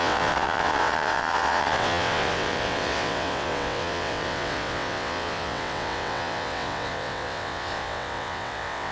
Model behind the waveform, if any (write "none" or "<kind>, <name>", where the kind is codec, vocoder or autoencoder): vocoder, WaveNeXt